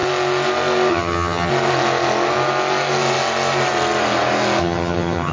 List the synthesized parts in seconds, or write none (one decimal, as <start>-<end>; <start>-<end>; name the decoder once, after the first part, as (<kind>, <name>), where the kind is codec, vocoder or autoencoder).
0.9-1.5 (vocoder, HiFi-GAN); 4.6-5.3